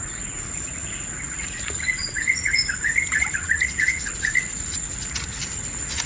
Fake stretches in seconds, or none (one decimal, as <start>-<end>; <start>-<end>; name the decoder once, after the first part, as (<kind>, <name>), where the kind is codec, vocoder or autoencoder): 0.0-6.1 (vocoder, Vocos)